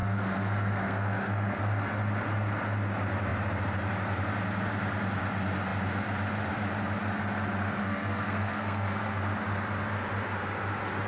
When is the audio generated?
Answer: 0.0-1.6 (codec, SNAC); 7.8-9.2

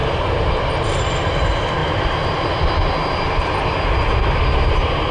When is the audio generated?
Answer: none